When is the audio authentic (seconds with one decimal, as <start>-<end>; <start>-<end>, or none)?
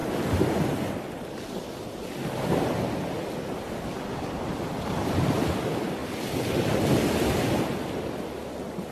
0.0-8.9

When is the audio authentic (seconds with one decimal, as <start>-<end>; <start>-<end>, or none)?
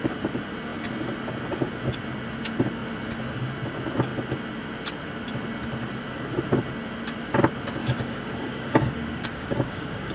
0.0-7.8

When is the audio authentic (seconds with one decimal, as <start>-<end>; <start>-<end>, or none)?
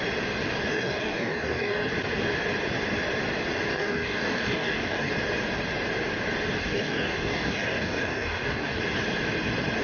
0.0-0.7; 1.9-3.7; 5.1-6.6; 8.8-9.8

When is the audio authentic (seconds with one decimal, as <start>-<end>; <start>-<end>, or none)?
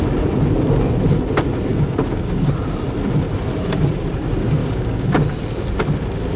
0.0-1.7; 2.5-4.6; 5.2-6.4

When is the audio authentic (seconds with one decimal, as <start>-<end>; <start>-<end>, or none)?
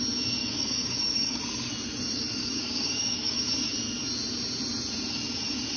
0.0-0.4; 1.4-2.4; 3.4-5.8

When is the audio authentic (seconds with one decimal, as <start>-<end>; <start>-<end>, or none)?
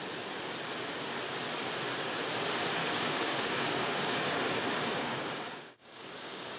0.0-2.8; 4.4-4.9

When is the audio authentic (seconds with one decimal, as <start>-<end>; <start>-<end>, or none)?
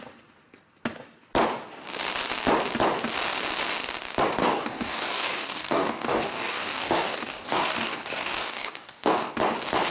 0.0-4.4; 9.3-9.9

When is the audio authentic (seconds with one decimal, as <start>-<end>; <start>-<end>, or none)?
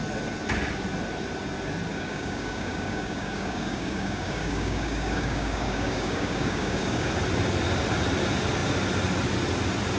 0.0-1.9; 7.1-10.0